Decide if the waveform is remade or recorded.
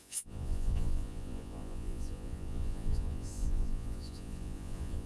remade